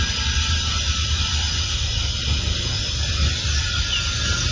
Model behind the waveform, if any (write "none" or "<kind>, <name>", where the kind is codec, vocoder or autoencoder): none